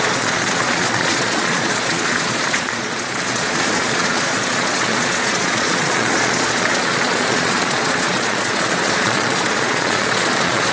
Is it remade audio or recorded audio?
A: remade